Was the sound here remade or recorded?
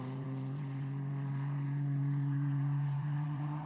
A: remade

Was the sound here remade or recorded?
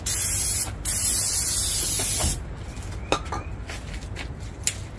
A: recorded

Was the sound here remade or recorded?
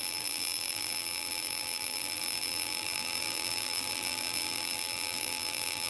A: remade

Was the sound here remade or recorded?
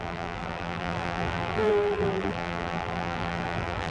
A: remade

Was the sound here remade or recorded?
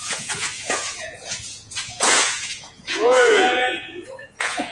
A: remade